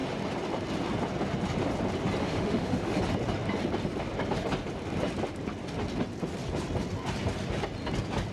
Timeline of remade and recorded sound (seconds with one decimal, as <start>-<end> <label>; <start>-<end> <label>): 0.0-2.2 recorded; 2.2-3.0 remade; 3.0-8.3 recorded